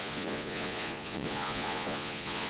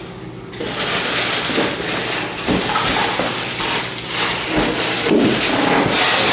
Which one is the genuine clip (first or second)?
second